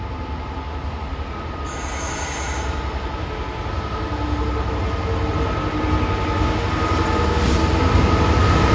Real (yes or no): yes